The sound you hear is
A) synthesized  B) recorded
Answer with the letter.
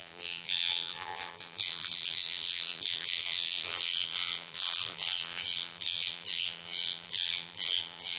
A